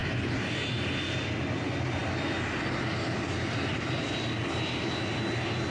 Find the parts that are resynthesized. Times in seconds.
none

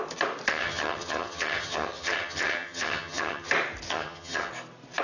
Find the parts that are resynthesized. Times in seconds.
0.5-3.5 (vocoder, HiFi-GAN); 3.9-4.5

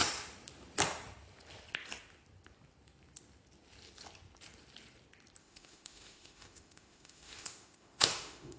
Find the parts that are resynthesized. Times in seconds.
5.4-8.6 (autoencoder, DAC-VAE)

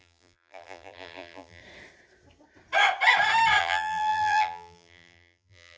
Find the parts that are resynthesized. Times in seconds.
0.0-1.6 (vocoder, BigVGAN v2); 3.6-5.8